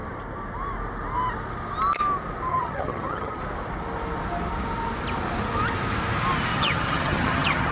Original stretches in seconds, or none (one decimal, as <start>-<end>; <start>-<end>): 0.0-2.5; 3.4-6.5